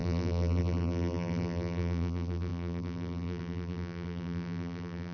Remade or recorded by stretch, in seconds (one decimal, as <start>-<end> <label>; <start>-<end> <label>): 0.0-5.1 remade